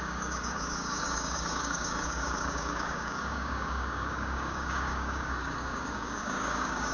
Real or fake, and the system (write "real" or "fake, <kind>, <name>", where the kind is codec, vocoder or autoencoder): fake, codec, DAC